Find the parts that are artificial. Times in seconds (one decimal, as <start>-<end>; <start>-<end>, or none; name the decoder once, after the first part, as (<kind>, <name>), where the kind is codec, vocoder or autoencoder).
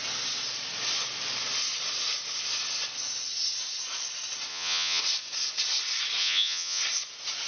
4.5-5.0 (vocoder, Vocos); 6.2-6.8